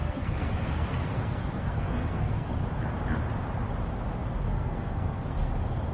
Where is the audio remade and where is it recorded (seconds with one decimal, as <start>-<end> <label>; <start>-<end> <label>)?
0.0-2.5 remade; 2.5-4.5 recorded; 4.5-5.5 remade; 5.5-5.9 recorded